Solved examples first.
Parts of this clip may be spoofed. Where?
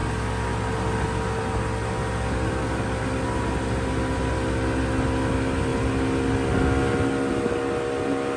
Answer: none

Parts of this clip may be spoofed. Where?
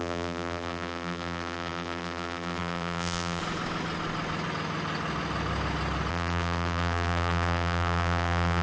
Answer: 0.0-3.4 (vocoder, BigVGAN v2); 6.1-8.6